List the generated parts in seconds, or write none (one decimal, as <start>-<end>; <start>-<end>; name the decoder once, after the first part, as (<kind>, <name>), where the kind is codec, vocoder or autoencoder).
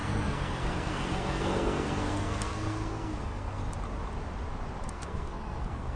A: 0.0-3.6 (codec, SNAC); 4.9-6.0